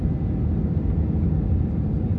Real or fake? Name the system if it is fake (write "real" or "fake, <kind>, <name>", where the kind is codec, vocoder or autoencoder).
real